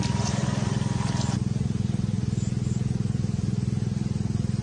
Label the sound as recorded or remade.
recorded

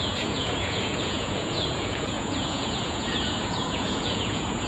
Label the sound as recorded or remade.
remade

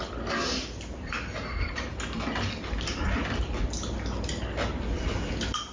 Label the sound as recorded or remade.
recorded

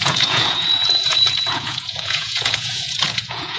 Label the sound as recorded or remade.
remade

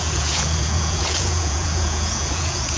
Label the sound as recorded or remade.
remade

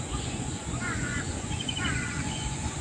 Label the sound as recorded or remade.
remade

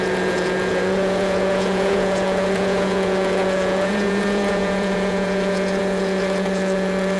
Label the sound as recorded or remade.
remade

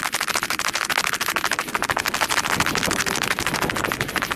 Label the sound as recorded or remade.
recorded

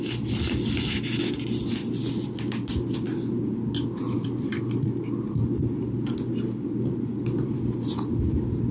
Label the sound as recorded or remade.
recorded